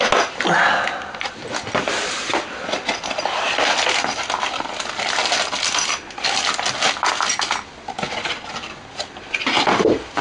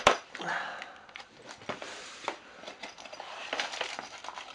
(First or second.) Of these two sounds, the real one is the first